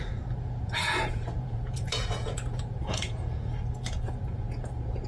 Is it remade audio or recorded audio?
remade